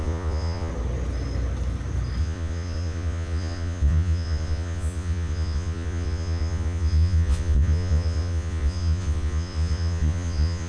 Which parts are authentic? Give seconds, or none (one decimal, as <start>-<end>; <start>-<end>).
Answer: 0.7-2.2